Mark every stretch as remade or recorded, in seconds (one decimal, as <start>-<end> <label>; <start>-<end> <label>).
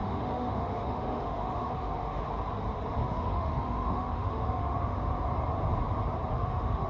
0.0-2.2 remade; 2.2-3.0 recorded; 3.0-5.1 remade; 5.1-6.3 recorded; 6.3-6.9 remade